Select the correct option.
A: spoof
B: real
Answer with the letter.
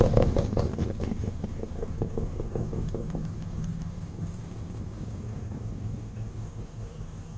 A